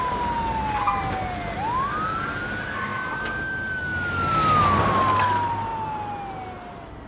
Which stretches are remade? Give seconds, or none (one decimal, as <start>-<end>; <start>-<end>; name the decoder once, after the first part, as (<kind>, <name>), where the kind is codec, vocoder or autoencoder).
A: none